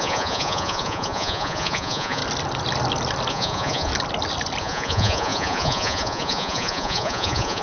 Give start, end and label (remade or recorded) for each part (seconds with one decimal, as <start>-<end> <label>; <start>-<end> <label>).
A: 0.0-2.2 remade; 2.2-3.3 recorded; 3.3-3.9 remade; 3.9-4.6 recorded; 4.6-7.6 remade